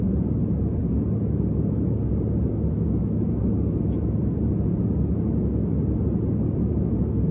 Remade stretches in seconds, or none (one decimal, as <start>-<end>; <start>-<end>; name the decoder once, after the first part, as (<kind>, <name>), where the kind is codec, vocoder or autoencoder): none